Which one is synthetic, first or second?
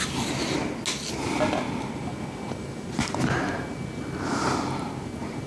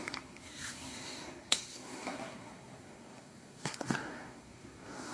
second